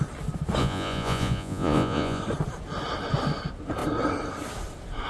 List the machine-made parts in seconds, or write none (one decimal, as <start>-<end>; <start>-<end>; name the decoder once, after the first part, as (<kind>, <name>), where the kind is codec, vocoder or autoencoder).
0.6-2.2 (vocoder, Vocos)